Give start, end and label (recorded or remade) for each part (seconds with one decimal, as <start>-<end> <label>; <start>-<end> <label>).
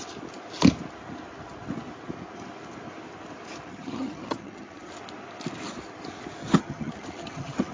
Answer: 0.0-3.7 recorded; 3.7-4.9 remade; 4.9-6.4 recorded; 6.4-7.7 remade